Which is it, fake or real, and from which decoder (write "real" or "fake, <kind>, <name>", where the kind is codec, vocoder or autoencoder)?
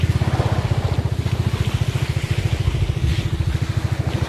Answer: real